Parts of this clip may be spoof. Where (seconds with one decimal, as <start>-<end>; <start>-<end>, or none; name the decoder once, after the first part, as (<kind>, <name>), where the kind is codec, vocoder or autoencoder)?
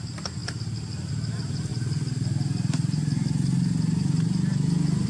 none